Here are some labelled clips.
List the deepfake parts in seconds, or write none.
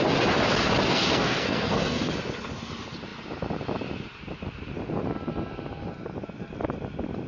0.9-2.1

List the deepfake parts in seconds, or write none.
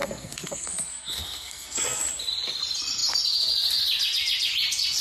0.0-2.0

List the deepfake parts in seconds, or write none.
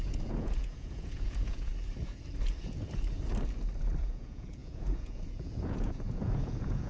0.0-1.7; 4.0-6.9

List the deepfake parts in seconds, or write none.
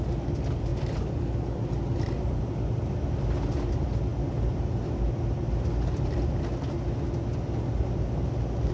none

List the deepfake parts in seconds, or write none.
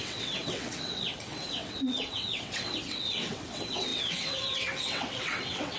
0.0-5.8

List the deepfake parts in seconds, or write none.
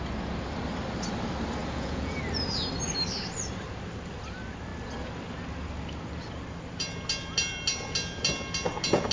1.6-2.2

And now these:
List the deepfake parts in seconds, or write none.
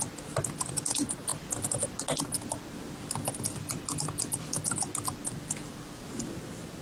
none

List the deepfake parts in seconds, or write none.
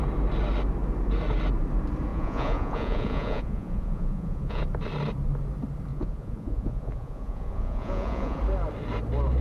2.1-4.6; 5.9-8.4